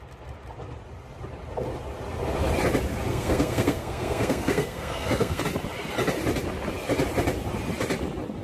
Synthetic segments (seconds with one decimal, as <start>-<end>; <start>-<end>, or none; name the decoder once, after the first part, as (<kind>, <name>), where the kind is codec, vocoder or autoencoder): 3.1-5.4 (codec, SNAC)